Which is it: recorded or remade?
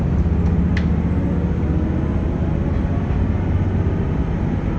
recorded